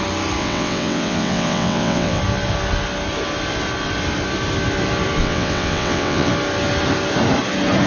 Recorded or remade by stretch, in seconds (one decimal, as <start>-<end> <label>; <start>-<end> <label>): 0.0-0.4 recorded; 0.4-2.2 remade; 2.2-5.2 recorded; 5.2-6.3 remade; 6.3-7.9 recorded